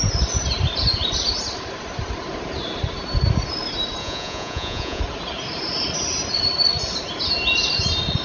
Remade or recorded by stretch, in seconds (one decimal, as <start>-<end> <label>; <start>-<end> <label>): 0.0-4.0 recorded; 4.0-5.0 remade; 5.0-8.2 recorded